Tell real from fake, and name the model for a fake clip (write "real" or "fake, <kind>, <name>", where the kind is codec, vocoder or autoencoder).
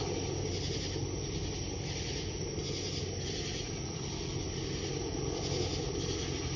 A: real